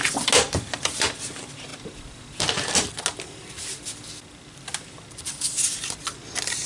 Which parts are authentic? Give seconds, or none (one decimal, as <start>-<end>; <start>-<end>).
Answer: 0.0-6.7